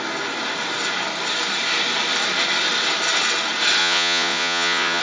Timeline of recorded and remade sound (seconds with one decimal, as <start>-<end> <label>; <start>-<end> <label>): 0.0-3.8 recorded; 3.8-5.0 remade